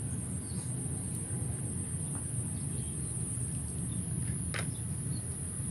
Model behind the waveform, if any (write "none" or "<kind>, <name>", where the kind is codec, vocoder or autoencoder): none